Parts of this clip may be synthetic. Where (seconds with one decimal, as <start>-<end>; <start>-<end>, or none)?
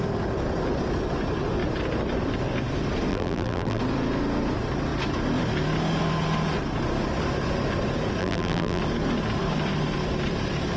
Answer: 3.1-3.8; 8.2-8.8